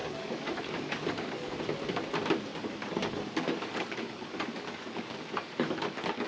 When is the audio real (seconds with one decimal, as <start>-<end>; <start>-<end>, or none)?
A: 1.6-2.5